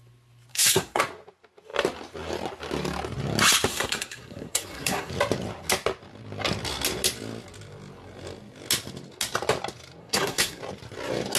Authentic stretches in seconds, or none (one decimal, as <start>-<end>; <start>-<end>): 0.0-0.5; 1.0-3.7; 5.1-10.0; 10.6-11.4

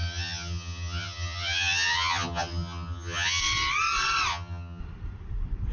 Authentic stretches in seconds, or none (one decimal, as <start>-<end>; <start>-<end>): 3.4-4.3; 4.8-5.7

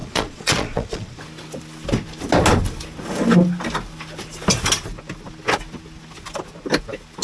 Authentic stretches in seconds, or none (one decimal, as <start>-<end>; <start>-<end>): 1.2-7.2

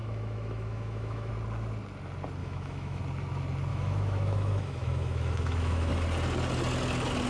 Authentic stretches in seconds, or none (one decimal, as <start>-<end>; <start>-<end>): 1.3-2.4; 3.0-3.7; 5.9-7.3

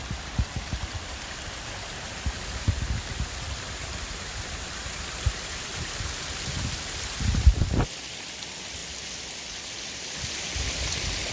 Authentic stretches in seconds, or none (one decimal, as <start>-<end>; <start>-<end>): 8.8-11.3

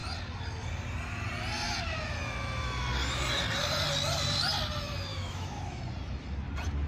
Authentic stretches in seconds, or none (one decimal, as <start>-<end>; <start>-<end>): 0.0-5.1; 5.8-6.9

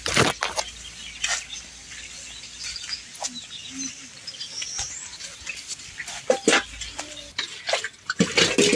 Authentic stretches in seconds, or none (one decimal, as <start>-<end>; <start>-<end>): 0.0-8.8